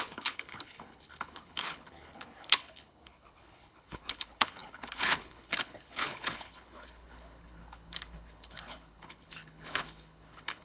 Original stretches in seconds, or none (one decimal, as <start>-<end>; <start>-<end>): none